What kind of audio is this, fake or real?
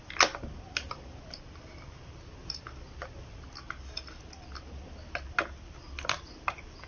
real